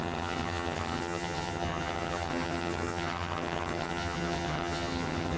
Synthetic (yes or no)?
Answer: yes